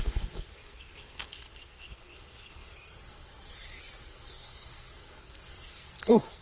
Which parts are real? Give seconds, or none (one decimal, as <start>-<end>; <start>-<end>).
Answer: none